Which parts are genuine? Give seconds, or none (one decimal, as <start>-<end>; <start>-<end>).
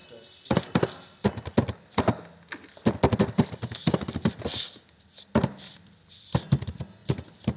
0.0-7.6